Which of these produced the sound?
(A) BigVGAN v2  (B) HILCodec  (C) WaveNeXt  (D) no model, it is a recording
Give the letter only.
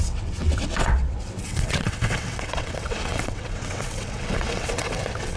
C